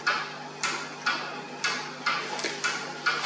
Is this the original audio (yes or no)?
yes